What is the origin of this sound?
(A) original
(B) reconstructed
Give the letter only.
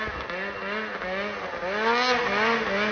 A